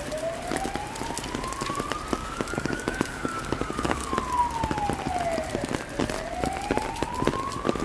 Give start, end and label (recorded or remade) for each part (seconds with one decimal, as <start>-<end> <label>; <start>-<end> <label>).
0.0-2.2 recorded; 2.2-4.1 remade; 4.1-7.8 recorded

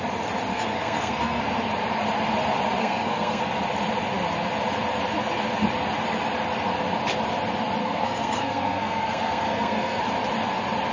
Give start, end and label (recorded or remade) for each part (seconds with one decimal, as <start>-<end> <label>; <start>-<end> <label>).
0.0-0.5 recorded; 0.5-1.4 remade; 1.4-2.8 recorded; 2.8-3.4 remade; 3.4-7.8 recorded; 7.8-10.0 remade; 10.0-10.9 recorded

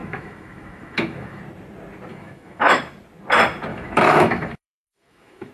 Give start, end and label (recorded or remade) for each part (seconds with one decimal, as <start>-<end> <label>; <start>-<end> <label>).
0.0-1.4 remade; 1.4-2.1 recorded; 2.1-2.8 remade; 2.8-3.7 recorded; 3.7-5.5 remade